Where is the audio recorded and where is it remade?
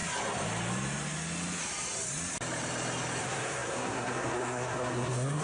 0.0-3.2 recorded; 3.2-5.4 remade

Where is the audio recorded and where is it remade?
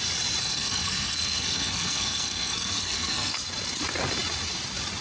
0.0-0.4 recorded; 0.4-3.4 remade; 3.4-5.0 recorded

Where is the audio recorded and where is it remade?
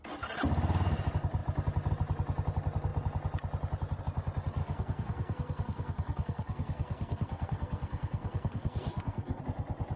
0.0-4.6 recorded; 4.6-9.4 remade; 9.4-10.0 recorded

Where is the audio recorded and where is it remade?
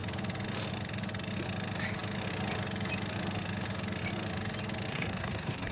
0.0-4.9 recorded; 4.9-5.7 remade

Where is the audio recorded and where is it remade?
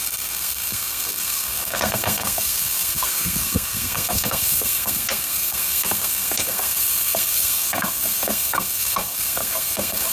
0.0-10.1 remade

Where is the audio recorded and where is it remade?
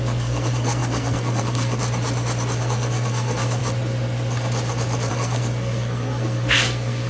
0.0-1.8 remade; 1.8-2.6 recorded; 2.6-3.6 remade; 3.6-5.1 recorded; 5.1-7.1 remade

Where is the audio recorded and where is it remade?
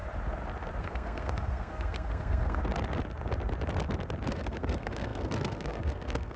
0.0-0.8 recorded; 0.8-2.6 remade; 2.6-4.3 recorded; 4.3-6.4 remade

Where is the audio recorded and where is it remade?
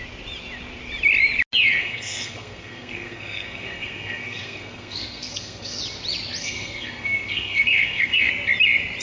0.0-1.8 recorded; 1.8-5.8 remade; 5.8-6.4 recorded; 6.4-8.3 remade; 8.3-9.0 recorded